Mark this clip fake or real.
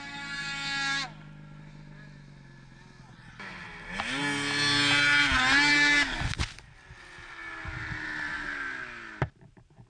real